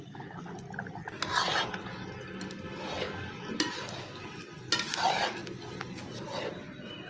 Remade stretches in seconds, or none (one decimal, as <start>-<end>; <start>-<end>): none